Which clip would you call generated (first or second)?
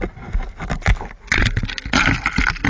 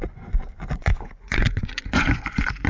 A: second